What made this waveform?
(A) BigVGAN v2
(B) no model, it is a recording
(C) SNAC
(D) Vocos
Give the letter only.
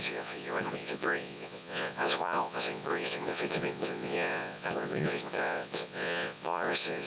D